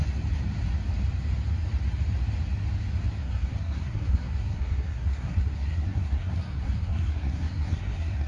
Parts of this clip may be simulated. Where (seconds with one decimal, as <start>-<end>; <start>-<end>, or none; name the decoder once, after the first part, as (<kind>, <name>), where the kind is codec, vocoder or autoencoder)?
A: 3.2-8.3 (codec, SNAC)